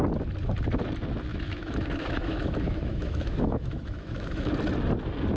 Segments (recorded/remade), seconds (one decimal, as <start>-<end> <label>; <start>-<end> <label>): 0.0-1.3 recorded; 1.3-4.5 remade; 4.5-5.4 recorded